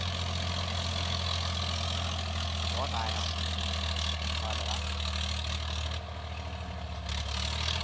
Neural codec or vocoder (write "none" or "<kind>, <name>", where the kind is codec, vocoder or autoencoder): none